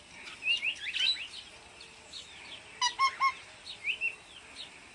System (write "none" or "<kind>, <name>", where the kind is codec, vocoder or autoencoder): none